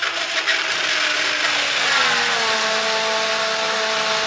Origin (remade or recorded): recorded